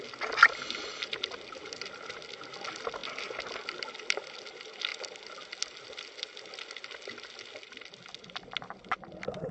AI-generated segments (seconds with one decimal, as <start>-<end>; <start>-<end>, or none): none